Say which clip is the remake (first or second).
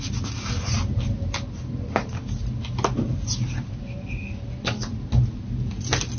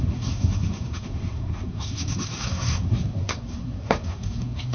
second